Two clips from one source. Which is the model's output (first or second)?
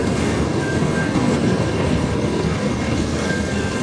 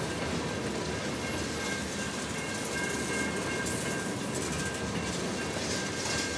first